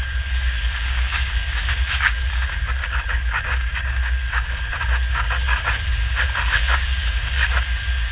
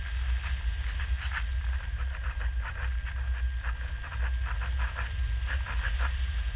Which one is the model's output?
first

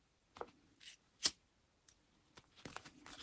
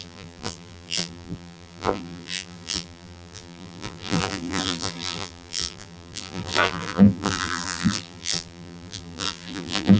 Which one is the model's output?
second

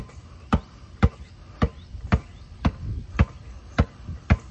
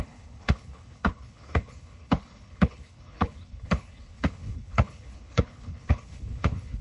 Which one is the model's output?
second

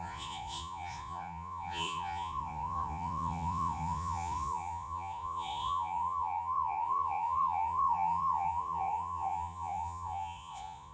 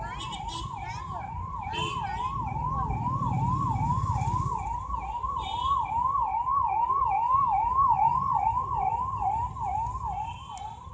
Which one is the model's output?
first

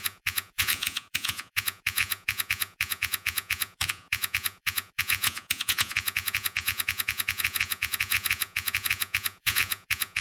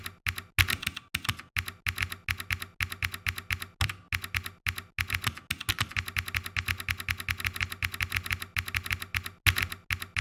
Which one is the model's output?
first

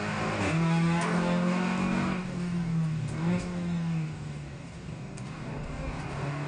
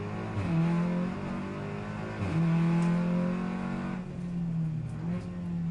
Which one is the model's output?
first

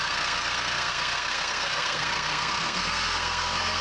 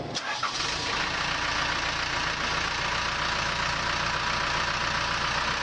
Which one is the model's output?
first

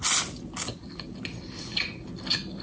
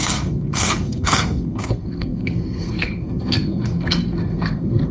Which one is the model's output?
second